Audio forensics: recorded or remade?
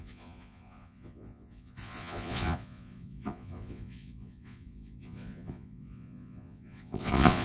remade